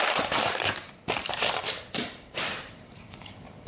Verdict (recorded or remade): remade